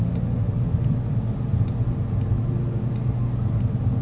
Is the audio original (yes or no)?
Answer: yes